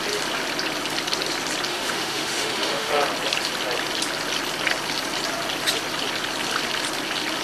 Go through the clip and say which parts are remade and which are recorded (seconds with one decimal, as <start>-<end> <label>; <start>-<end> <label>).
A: 0.0-1.7 recorded; 1.7-2.9 remade; 2.9-7.4 recorded